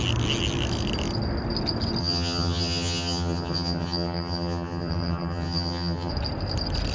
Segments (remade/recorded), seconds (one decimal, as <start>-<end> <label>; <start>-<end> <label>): 0.0-2.0 recorded; 2.0-6.1 remade; 6.1-6.9 recorded